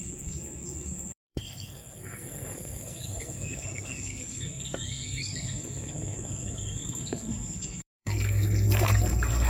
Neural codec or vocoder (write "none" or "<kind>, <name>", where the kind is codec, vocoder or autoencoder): codec, SNAC